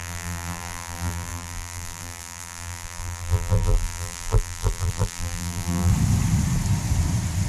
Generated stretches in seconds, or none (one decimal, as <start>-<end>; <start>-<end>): 0.0-5.9